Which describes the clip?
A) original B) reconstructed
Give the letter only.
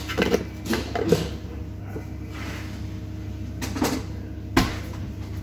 A